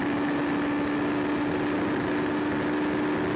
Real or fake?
real